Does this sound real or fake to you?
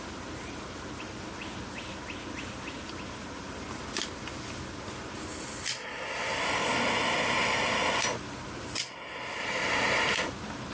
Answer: real